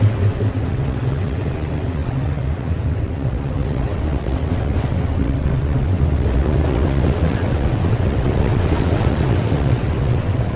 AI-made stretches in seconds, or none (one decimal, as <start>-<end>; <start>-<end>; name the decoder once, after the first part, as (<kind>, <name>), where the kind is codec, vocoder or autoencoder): 0.0-10.6 (vocoder, WaveNeXt)